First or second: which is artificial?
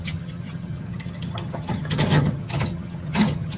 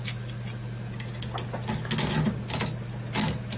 first